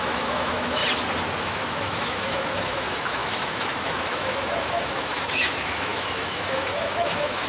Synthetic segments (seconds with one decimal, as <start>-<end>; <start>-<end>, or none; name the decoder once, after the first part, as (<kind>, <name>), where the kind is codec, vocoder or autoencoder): 0.0-0.8 (autoencoder, DAC-VAE); 1.4-7.5